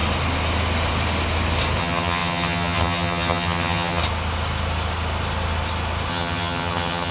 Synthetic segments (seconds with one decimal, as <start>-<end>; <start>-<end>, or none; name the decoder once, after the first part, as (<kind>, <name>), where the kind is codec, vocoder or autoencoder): 1.8-4.0 (vocoder, HiFi-GAN); 6.1-7.1